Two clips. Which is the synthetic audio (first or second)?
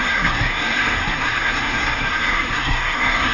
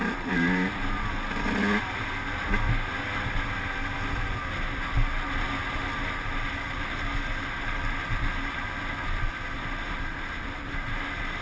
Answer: first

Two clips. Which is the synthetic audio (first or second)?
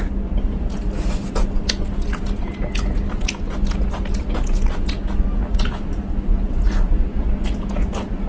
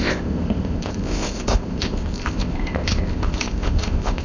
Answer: second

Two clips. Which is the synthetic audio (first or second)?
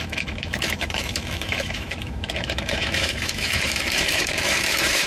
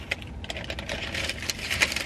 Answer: first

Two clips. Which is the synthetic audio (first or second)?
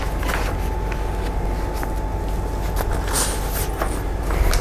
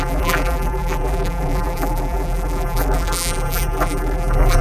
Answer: second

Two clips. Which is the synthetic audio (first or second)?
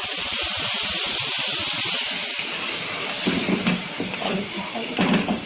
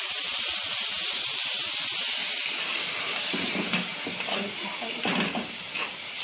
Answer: first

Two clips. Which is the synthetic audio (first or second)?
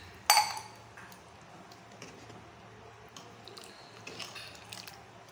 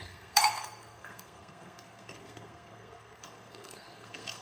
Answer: second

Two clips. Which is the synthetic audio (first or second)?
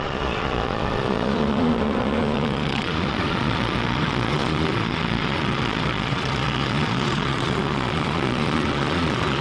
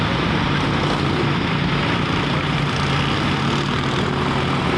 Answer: first